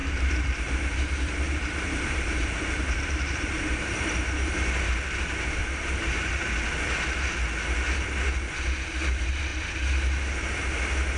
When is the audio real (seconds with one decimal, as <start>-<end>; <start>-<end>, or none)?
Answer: 4.7-5.6; 6.3-11.2

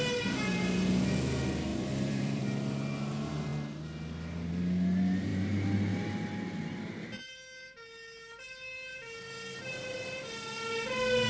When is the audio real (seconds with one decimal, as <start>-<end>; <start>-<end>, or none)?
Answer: 0.0-1.7; 2.4-11.3